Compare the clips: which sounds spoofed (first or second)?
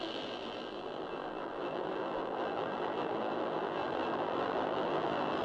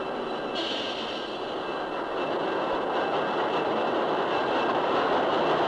first